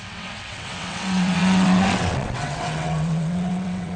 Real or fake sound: fake